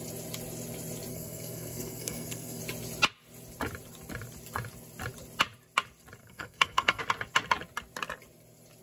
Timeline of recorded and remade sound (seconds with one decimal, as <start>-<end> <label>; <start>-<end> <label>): 0.0-1.1 recorded; 1.1-2.6 remade; 2.6-6.2 recorded; 6.2-7.0 remade; 7.0-8.8 recorded